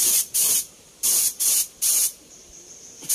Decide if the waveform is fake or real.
fake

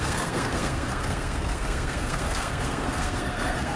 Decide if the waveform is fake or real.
fake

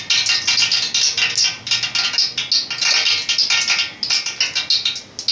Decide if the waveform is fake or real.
real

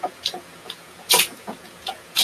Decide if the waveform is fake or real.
fake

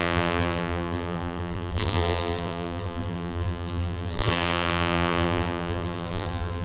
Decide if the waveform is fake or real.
fake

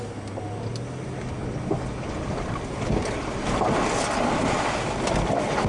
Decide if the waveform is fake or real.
real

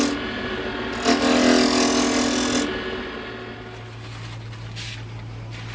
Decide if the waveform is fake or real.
real